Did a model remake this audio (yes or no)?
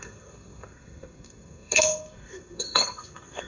yes